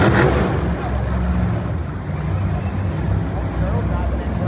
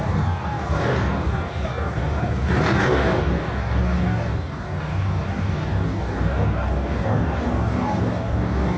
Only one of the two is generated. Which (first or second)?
second